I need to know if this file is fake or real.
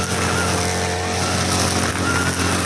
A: real